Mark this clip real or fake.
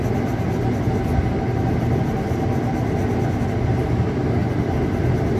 real